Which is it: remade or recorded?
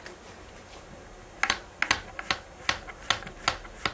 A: recorded